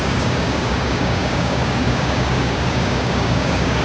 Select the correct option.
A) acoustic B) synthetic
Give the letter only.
B